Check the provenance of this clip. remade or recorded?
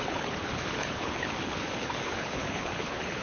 remade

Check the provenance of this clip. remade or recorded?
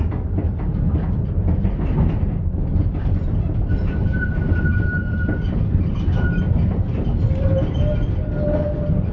recorded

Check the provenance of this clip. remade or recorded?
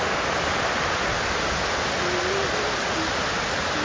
recorded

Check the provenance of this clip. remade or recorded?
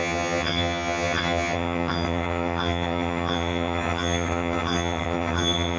remade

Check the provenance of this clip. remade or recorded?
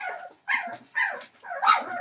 remade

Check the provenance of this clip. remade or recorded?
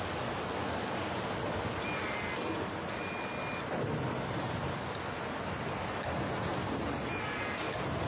recorded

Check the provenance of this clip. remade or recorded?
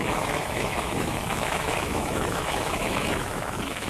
remade